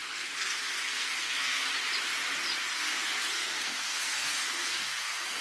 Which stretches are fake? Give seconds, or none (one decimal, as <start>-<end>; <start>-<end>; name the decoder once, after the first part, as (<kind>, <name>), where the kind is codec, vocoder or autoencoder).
0.0-1.7 (codec, SNAC); 2.7-5.4